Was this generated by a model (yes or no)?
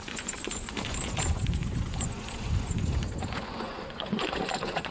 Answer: yes